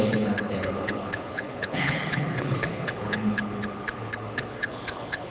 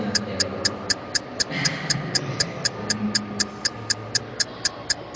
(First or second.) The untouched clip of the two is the second